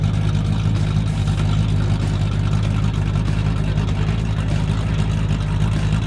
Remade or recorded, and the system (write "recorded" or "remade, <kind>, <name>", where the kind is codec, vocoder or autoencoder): recorded